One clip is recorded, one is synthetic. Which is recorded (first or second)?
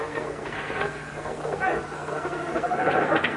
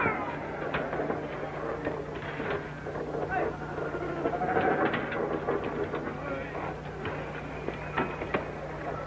second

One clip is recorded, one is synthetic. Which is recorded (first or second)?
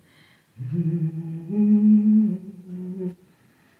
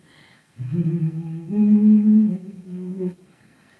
first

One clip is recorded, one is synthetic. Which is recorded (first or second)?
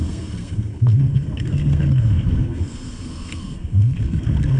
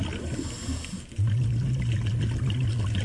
second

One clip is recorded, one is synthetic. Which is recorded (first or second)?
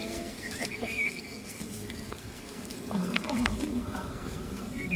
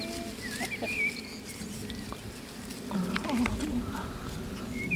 second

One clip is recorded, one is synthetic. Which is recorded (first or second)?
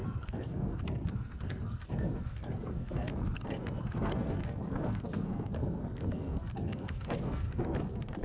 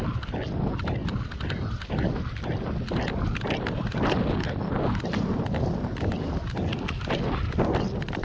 second